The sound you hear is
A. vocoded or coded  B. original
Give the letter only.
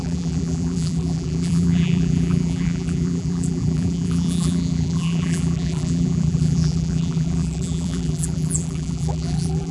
A